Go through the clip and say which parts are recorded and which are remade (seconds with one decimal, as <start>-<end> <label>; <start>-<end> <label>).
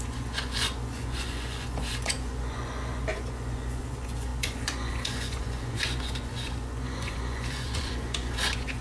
0.0-8.8 remade